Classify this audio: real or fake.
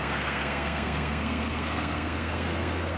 fake